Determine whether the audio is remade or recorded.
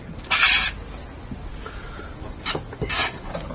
recorded